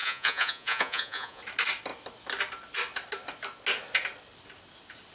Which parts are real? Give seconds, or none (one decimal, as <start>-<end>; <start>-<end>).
1.4-5.1